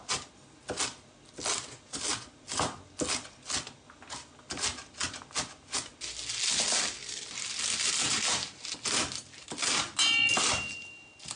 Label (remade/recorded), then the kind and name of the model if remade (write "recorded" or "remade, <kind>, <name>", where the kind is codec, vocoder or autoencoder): recorded